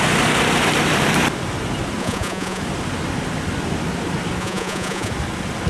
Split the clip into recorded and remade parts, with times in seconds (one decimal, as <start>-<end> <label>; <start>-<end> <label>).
0.0-2.0 recorded; 2.0-2.6 remade; 2.6-4.4 recorded; 4.4-5.1 remade; 5.1-5.7 recorded